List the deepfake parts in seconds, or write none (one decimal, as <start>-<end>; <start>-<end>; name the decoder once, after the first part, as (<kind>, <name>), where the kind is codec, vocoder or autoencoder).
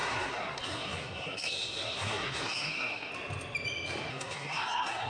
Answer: 0.0-3.1 (codec, SNAC); 4.1-5.1